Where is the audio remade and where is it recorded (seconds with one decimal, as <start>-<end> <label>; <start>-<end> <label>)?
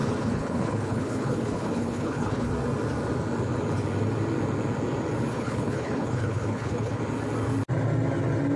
0.0-2.5 remade; 2.5-5.3 recorded; 5.3-7.0 remade; 7.0-8.6 recorded